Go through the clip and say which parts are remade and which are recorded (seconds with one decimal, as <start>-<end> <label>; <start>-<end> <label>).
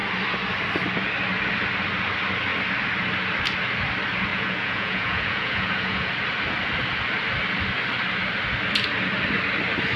0.0-4.3 recorded; 4.3-6.1 remade; 6.1-10.0 recorded